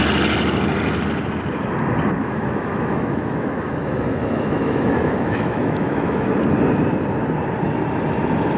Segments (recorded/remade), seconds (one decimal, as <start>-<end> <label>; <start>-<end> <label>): 0.0-2.2 recorded; 2.2-6.3 remade; 6.3-8.6 recorded